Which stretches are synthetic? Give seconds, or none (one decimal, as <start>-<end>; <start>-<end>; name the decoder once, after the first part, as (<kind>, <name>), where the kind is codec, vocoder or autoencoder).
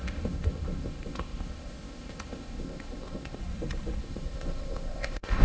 0.0-3.4 (codec, ZipCodec); 4.0-5.4